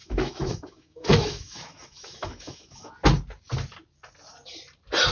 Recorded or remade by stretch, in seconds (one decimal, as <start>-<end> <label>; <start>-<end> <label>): 0.0-2.9 remade; 2.9-5.1 recorded